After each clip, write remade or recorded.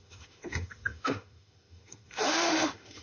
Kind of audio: remade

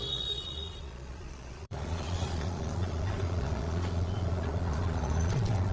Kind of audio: remade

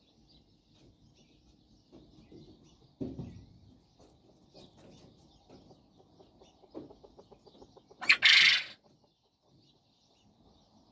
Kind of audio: recorded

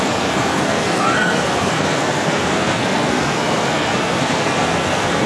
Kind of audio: remade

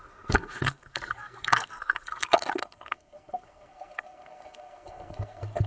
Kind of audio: remade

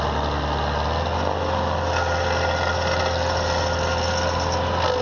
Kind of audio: recorded